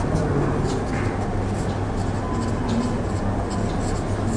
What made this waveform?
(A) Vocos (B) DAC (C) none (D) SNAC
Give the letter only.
C